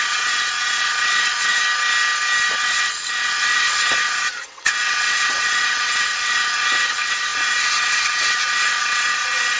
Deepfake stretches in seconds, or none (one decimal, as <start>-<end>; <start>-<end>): 0.0-1.6; 2.5-9.6